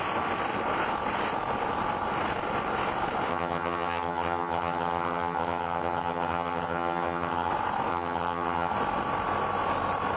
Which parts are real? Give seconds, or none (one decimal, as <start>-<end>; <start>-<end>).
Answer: 0.0-3.3; 7.5-7.9; 8.7-10.2